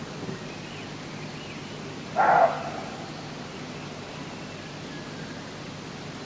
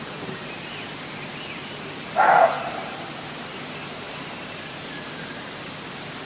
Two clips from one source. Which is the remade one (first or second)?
second